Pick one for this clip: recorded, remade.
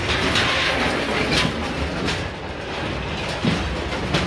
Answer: recorded